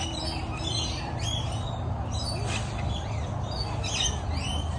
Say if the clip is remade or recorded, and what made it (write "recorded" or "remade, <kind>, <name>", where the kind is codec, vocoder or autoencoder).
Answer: recorded